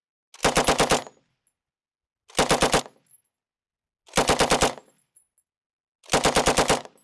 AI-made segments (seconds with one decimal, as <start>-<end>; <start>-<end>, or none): none